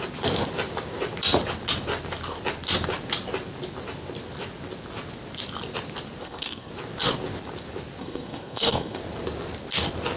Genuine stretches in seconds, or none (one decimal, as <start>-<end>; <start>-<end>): 0.0-6.2; 6.7-8.0; 9.0-10.2